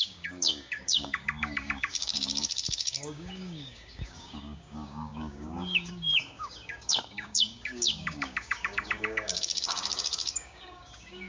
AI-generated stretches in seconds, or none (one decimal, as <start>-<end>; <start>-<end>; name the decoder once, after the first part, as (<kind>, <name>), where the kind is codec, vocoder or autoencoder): 0.0-11.3 (codec, DAC)